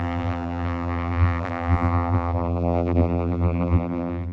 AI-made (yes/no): yes